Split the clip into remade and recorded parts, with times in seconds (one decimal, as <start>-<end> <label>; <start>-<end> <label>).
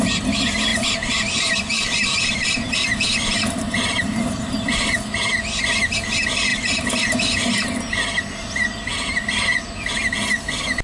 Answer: 0.0-0.7 recorded; 0.7-4.9 remade; 4.9-10.8 recorded